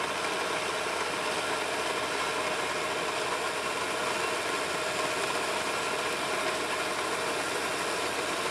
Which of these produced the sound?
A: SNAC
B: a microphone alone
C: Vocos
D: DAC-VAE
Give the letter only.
B